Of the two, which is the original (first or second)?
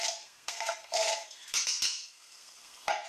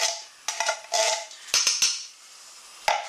second